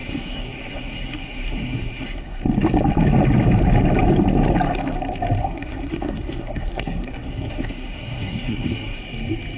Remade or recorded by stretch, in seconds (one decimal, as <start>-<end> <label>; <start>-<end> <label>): 0.0-2.4 remade; 2.4-5.4 recorded; 5.4-9.0 remade; 9.0-9.6 recorded

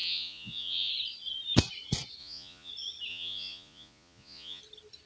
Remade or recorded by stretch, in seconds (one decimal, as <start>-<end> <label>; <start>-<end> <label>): 0.0-0.9 remade; 0.9-2.2 recorded; 2.2-2.7 remade; 2.7-3.1 recorded; 3.1-4.6 remade; 4.6-5.1 recorded

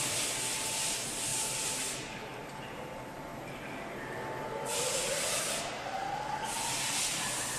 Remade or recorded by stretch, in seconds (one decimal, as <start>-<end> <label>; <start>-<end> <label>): 0.0-7.6 recorded

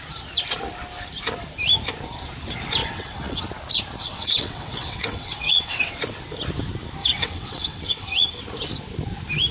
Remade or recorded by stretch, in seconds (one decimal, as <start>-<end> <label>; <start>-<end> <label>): 0.0-2.8 recorded; 2.8-3.4 remade; 3.4-4.0 recorded; 4.0-6.0 remade; 6.0-7.0 recorded; 7.0-8.4 remade; 8.4-9.5 recorded

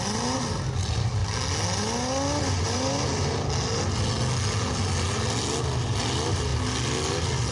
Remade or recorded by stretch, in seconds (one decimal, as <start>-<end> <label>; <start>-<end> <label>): 0.0-7.5 recorded

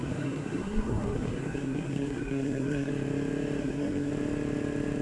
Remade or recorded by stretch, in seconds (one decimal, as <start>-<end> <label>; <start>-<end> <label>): 0.0-2.9 remade; 2.9-3.6 recorded; 3.6-4.1 remade; 4.1-5.0 recorded

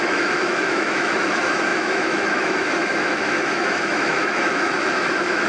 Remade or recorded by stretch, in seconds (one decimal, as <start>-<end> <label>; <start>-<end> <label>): 0.0-5.5 remade